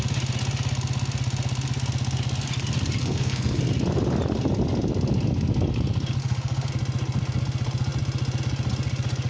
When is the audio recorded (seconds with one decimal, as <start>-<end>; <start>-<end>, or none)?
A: 0.0-3.0; 3.6-6.2; 6.7-9.3